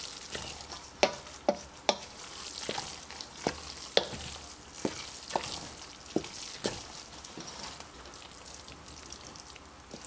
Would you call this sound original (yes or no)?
yes